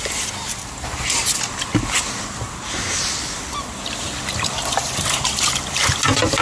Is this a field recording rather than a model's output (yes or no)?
yes